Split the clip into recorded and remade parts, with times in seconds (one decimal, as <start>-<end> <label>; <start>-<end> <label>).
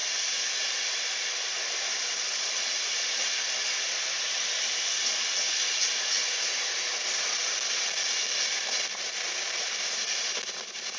0.0-11.0 recorded